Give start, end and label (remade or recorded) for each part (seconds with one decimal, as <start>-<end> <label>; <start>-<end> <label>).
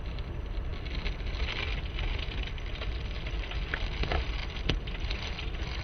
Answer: 0.0-5.8 recorded